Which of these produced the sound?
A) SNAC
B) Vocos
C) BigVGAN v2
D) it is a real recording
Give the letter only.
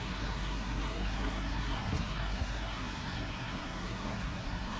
A